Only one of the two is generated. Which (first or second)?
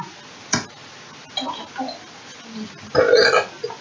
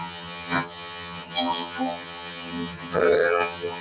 second